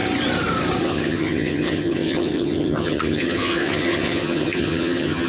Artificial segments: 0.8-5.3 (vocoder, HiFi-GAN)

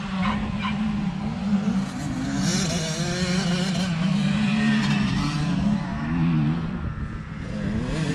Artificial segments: none

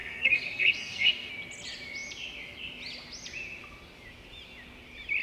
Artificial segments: 0.0-1.3 (codec, SNAC)